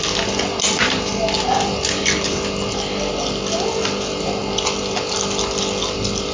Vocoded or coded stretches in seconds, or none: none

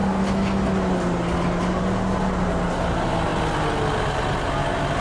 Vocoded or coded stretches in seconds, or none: none

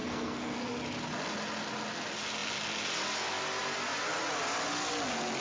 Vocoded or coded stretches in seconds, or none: 0.0-0.8 (codec, SNAC)

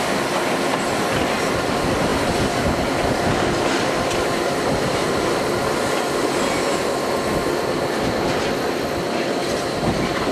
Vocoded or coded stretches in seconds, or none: none

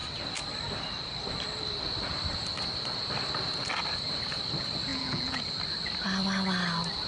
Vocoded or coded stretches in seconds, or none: 4.9-5.4 (vocoder, Vocos)